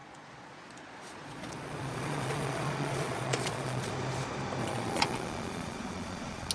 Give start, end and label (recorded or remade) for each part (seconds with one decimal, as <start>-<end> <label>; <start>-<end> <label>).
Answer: 0.0-3.9 remade; 3.9-4.6 recorded; 4.6-6.5 remade

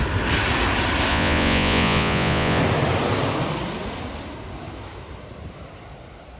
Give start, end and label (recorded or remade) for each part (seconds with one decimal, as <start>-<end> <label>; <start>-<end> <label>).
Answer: 0.0-1.1 recorded; 1.1-2.6 remade; 2.6-6.4 recorded

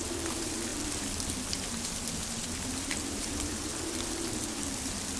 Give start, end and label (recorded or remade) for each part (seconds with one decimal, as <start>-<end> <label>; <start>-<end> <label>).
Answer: 0.0-5.2 recorded